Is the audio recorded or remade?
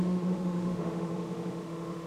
remade